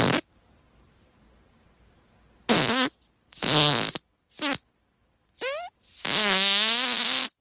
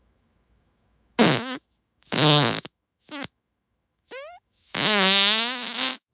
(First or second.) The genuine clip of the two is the first